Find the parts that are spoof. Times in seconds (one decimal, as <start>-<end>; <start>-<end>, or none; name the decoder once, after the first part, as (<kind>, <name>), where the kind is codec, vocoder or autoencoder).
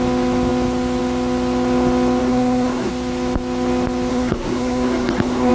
2.2-2.9 (codec, SNAC); 4.1-5.5